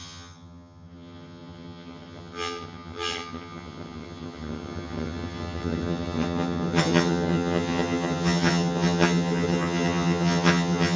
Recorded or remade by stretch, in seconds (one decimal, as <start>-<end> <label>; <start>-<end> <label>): 0.0-11.0 remade